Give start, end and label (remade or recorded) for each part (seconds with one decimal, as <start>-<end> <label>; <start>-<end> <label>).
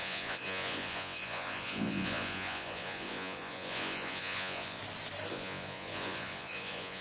0.0-4.8 remade; 4.8-5.3 recorded; 5.3-7.0 remade